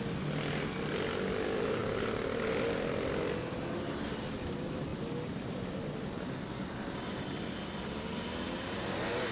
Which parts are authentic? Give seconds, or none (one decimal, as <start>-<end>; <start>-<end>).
0.0-9.3